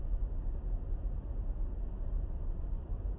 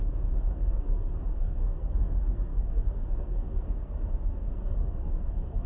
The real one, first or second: first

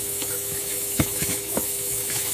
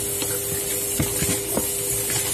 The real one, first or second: second